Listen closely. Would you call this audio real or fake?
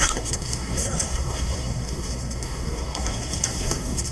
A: fake